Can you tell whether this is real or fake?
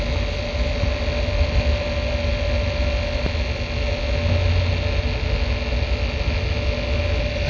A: real